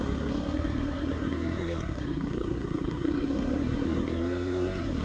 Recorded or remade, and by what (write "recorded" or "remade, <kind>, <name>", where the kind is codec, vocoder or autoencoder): remade, codec, SNAC